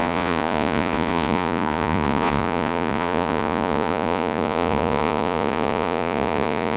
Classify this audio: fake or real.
fake